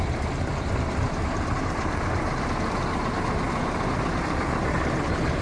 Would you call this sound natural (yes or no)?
no